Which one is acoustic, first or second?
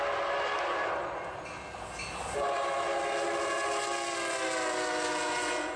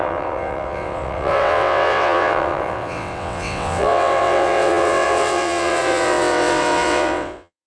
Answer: first